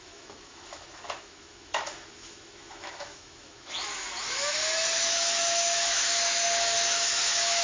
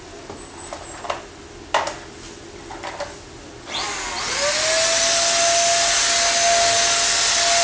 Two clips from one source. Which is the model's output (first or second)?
first